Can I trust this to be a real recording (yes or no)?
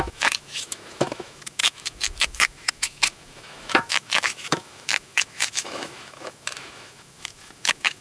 no